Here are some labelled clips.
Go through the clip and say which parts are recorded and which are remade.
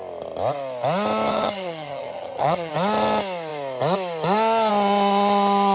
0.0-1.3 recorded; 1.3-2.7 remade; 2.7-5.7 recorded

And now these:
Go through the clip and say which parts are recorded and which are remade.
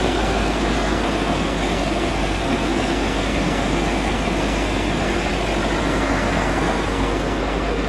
0.0-5.3 remade; 5.3-5.8 recorded; 5.8-7.9 remade